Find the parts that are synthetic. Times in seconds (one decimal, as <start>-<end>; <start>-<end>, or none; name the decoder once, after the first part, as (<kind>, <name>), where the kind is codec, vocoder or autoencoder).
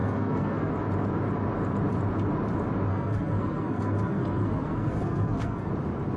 0.0-0.7 (codec, SNAC); 2.9-5.7